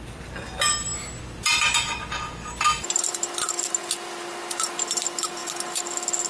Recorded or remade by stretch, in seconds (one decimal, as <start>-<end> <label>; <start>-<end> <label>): 0.0-6.3 recorded